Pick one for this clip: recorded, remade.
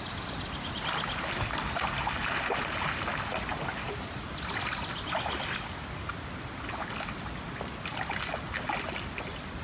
recorded